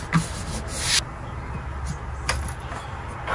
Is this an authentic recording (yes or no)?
yes